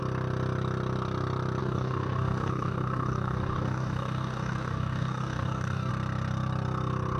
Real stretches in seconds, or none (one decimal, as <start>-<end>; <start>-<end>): 0.0-1.6; 5.9-7.2